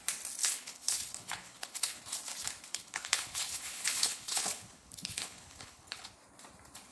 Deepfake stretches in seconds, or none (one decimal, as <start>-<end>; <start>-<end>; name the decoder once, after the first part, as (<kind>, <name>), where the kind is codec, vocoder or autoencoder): 0.4-2.0 (codec, HILCodec); 2.7-6.1